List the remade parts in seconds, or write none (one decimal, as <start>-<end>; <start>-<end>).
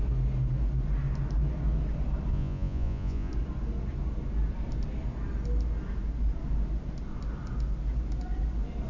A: 2.3-3.3